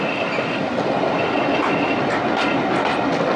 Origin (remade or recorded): recorded